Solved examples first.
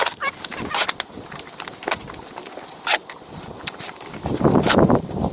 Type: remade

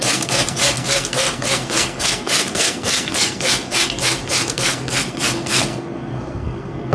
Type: remade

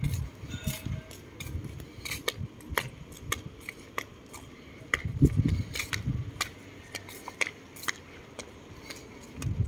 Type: recorded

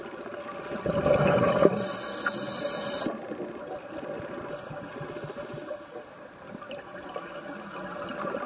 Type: recorded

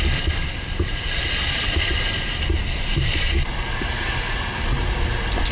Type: recorded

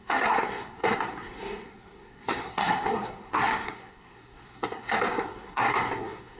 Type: remade